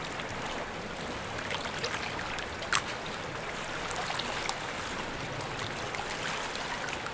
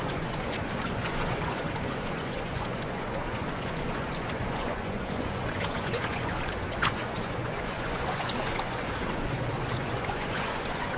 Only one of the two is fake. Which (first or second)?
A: second